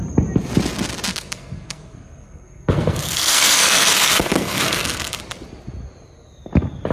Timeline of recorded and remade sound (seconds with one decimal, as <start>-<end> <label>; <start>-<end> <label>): 0.0-1.1 recorded; 1.1-5.2 remade; 5.2-6.9 recorded